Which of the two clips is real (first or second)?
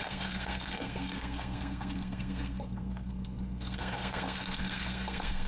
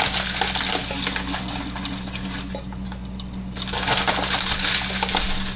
second